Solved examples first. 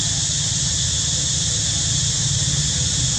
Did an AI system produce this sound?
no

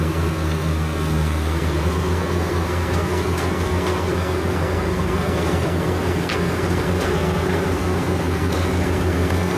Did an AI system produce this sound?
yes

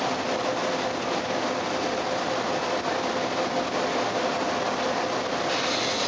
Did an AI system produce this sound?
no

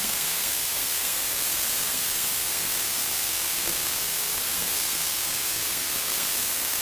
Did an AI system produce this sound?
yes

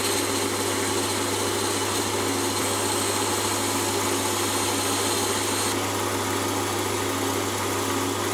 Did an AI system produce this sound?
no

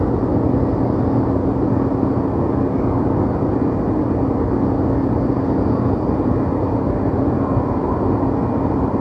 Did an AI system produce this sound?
no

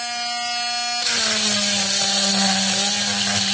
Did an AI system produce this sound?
no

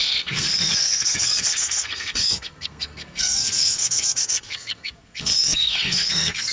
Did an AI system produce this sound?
yes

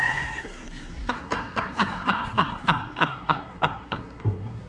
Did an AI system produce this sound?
yes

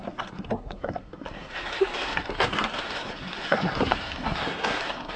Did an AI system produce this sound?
yes